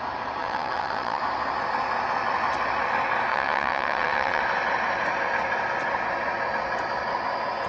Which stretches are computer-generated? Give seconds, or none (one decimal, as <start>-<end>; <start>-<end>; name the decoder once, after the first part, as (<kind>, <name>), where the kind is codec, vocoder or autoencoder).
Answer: 0.4-1.2 (vocoder, WaveNeXt); 3.3-4.4